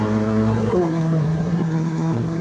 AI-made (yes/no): yes